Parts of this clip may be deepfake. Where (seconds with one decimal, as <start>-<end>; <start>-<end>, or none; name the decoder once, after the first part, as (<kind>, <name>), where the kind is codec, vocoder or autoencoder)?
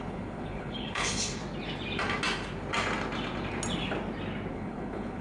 0.0-1.4 (codec, HILCodec); 4.5-5.2